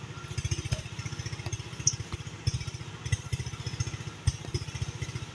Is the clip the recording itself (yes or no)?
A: yes